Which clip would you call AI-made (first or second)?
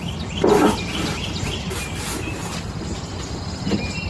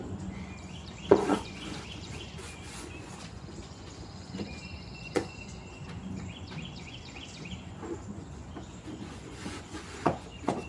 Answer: second